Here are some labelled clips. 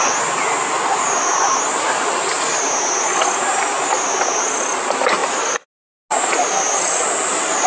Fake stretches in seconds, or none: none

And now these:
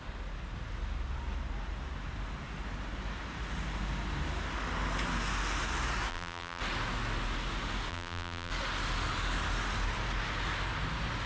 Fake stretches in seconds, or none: 6.1-6.6 (vocoder, BigVGAN v2); 7.9-8.5

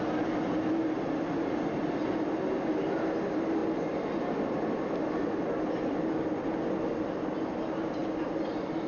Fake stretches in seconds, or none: none

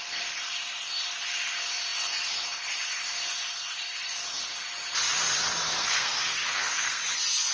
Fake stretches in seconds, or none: 5.8-7.0 (codec, SNAC)